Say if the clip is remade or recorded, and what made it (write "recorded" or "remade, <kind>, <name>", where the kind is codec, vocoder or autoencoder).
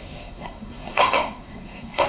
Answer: remade, codec, SNAC